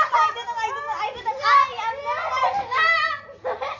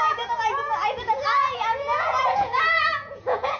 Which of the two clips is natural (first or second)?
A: first